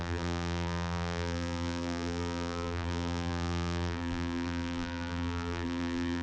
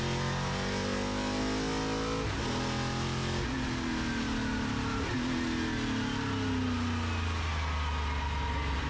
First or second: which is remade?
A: first